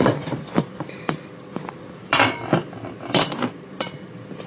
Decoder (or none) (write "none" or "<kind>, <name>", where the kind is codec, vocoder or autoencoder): vocoder, BigVGAN v2